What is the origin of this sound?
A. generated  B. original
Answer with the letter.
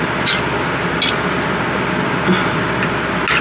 B